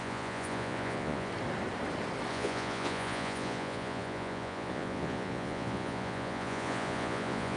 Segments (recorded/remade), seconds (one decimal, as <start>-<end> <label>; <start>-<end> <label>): 0.0-1.3 remade; 1.3-2.3 recorded; 2.3-7.6 remade

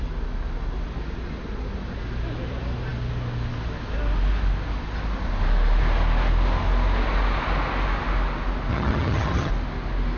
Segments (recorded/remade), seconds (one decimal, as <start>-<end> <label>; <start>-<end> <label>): 0.0-8.7 recorded; 8.7-9.5 remade; 9.5-10.2 recorded

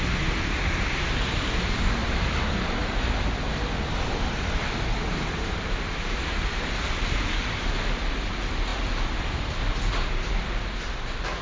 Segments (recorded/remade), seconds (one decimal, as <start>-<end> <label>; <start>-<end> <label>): 0.0-2.0 recorded; 2.0-6.7 remade; 6.7-11.4 recorded

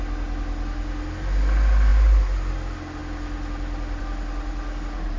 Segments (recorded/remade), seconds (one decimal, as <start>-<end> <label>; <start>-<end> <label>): 0.0-5.2 recorded

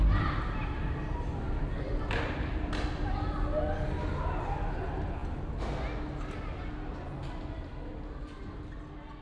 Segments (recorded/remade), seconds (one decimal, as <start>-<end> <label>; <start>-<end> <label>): 0.0-9.2 recorded

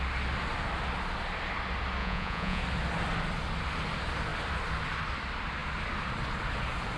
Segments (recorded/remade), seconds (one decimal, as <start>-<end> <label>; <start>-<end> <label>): 0.0-2.0 recorded; 2.0-2.6 remade; 2.6-7.0 recorded

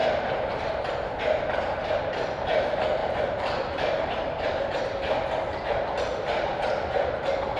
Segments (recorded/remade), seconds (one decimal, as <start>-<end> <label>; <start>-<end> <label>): 0.0-0.8 remade; 0.8-1.6 recorded; 1.6-2.5 remade; 2.5-3.0 recorded; 3.0-4.8 remade; 4.8-7.6 recorded